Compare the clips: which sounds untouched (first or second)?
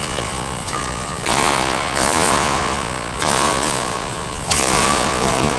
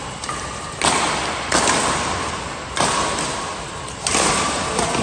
second